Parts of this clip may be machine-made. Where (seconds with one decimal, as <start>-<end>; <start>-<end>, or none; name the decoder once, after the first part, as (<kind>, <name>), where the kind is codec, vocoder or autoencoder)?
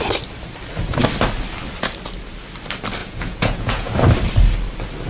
3.0-3.9 (vocoder, Vocos)